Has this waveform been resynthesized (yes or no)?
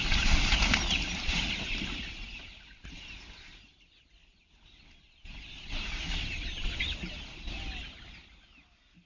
no